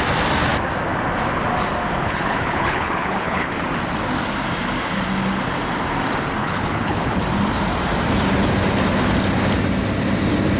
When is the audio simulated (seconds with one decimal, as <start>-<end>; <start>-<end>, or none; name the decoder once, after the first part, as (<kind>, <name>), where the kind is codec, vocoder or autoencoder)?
2.0-3.5 (codec, HILCodec); 6.4-7.2